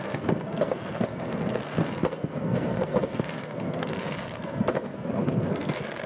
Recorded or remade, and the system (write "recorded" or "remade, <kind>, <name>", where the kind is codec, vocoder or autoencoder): remade, codec, SNAC